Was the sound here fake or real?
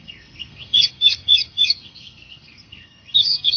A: fake